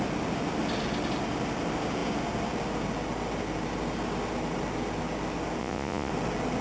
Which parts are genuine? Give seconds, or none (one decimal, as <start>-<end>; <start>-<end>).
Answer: 0.0-5.6; 6.1-6.6